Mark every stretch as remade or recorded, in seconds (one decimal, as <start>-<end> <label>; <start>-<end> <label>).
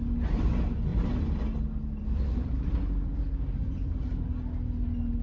0.0-0.9 recorded; 0.9-3.9 remade; 3.9-5.2 recorded